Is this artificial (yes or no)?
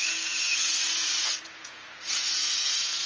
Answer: yes